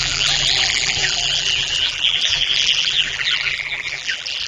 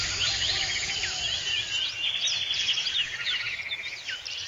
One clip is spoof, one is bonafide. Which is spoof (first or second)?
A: first